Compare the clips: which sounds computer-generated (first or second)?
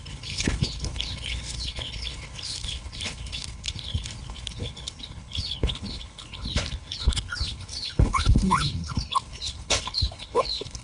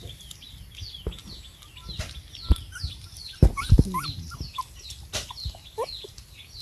first